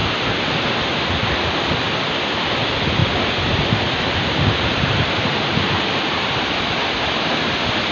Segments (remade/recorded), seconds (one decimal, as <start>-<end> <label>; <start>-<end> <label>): 0.0-3.0 recorded; 3.0-6.2 remade; 6.2-7.9 recorded